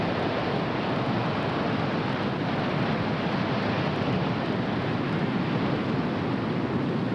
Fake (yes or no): no